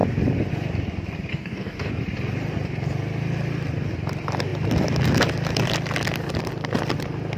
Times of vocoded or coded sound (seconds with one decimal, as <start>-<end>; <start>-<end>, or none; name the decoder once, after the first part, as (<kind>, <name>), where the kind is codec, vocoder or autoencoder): 1.3-1.9 (codec, DAC)